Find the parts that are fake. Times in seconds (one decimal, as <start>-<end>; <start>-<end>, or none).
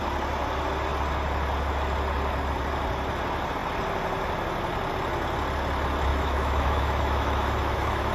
6.1-8.1